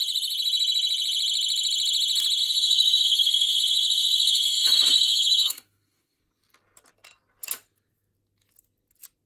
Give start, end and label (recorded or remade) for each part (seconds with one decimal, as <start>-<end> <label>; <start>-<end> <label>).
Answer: 0.0-2.4 recorded; 2.4-6.2 remade; 6.2-9.3 recorded